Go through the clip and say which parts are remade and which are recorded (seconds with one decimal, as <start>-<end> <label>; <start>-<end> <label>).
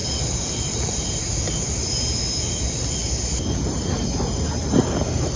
0.0-5.4 recorded